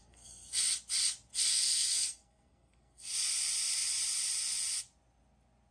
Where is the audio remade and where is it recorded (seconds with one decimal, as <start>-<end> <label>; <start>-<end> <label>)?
0.0-0.6 remade; 0.6-1.3 recorded; 1.3-3.1 remade; 3.1-5.7 recorded